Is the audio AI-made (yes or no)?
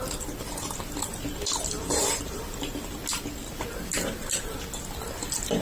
no